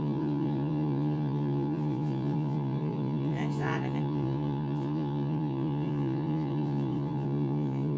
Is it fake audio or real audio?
fake